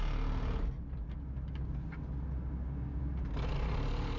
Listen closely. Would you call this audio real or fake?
real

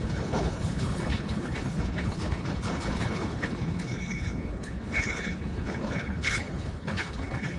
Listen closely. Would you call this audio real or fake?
fake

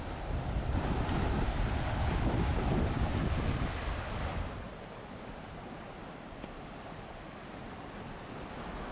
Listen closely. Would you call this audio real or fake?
real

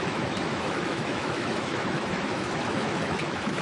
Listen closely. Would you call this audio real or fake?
fake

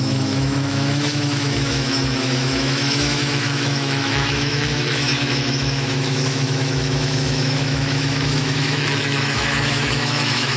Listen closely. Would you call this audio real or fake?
fake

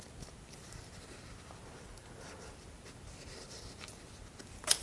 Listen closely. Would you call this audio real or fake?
real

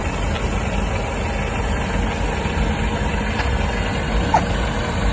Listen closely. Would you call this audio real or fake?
real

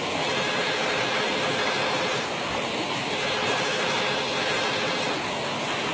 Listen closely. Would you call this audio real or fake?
real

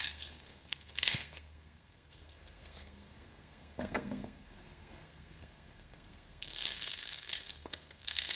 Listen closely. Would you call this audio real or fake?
fake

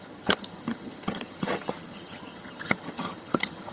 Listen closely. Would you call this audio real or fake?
fake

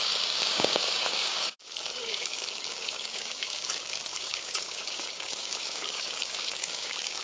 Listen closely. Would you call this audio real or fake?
fake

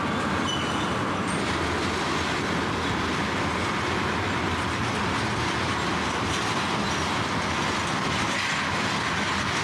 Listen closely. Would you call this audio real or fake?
real